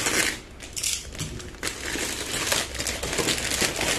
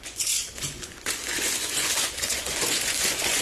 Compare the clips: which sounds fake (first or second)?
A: second